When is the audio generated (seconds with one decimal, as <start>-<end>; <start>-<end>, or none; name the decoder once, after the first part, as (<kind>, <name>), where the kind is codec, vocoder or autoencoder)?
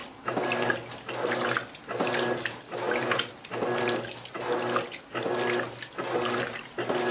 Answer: none